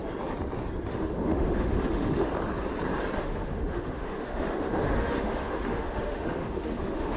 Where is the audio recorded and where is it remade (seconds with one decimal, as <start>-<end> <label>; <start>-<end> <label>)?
0.0-0.9 recorded; 0.9-2.3 remade; 2.3-3.2 recorded; 3.2-7.2 remade